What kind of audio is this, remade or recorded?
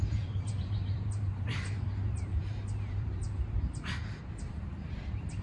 remade